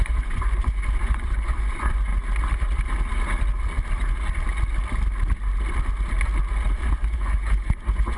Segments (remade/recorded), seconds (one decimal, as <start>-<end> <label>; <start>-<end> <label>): 0.0-2.1 remade; 2.1-6.9 recorded; 6.9-8.2 remade